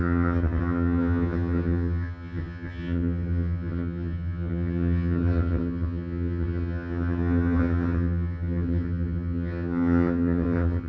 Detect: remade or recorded remade